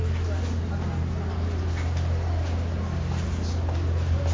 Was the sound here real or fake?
real